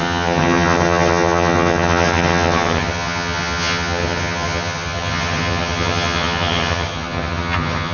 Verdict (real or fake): fake